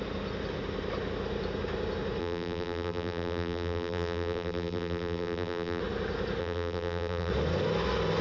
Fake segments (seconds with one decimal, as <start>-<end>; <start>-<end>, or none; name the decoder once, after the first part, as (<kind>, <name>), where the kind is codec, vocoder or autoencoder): 2.2-5.8 (vocoder, BigVGAN v2); 6.4-7.3